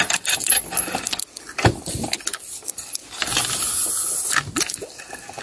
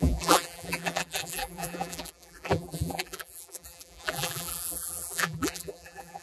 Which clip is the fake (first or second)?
second